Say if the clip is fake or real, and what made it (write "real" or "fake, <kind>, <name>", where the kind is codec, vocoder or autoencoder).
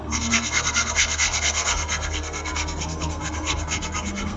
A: fake, codec, SNAC